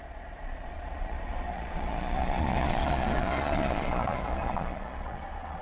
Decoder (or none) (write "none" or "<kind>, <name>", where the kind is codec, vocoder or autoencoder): vocoder, Vocos